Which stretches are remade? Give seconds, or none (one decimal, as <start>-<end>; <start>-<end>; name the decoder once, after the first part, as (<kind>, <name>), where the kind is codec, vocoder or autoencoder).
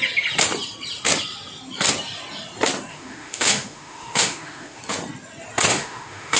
2.9-4.8 (autoencoder, DAC-VAE); 5.7-6.4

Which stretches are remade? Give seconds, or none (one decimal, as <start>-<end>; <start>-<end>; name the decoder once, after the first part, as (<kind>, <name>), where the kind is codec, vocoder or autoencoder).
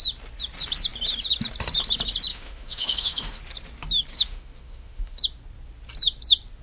2.3-3.4 (autoencoder, DAC-VAE); 4.1-5.2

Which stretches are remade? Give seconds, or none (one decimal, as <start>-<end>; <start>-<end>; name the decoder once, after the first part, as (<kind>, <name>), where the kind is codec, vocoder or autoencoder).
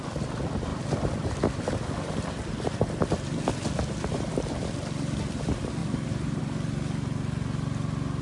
0.7-1.4 (vocoder, BigVGAN v2); 5.8-6.4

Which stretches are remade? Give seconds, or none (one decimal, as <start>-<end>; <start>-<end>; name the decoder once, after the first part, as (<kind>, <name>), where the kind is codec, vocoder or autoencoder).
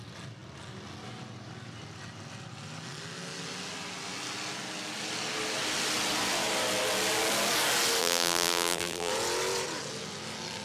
8.0-9.1 (vocoder, BigVGAN v2)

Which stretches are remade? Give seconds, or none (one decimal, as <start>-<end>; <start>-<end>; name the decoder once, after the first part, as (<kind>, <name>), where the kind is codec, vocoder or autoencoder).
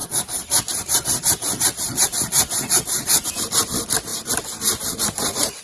none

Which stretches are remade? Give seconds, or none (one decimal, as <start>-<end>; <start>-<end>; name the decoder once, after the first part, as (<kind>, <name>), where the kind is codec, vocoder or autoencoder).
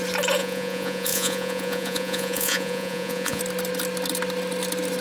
0.4-3.4 (vocoder, Vocos)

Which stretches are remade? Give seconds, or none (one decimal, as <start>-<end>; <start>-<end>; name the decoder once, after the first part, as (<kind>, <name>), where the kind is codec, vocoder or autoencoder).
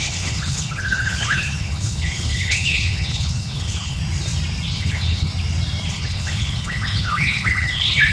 0.0-4.0 (codec, HILCodec); 4.7-5.3; 5.9-8.1